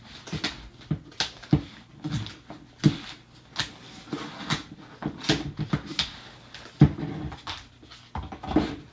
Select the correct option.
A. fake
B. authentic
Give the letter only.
B